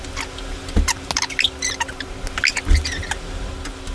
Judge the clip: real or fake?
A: real